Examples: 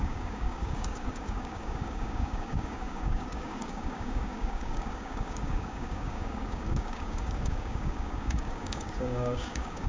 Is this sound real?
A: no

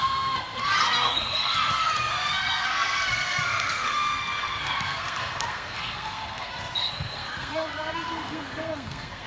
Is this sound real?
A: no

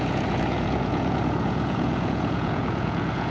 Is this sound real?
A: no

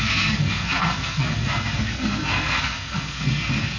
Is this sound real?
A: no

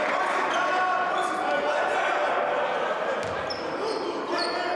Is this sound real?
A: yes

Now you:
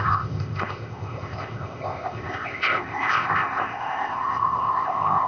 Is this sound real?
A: no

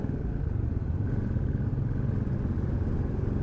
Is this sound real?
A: yes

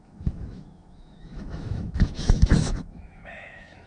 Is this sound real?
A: no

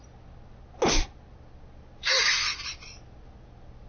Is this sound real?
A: yes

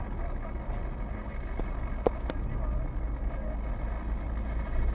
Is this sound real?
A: yes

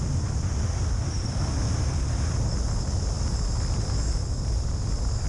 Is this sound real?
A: yes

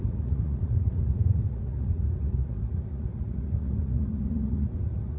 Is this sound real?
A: no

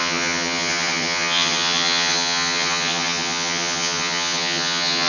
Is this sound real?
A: no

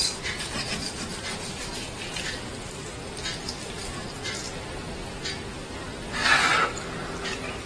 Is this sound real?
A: yes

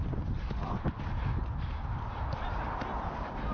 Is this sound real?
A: yes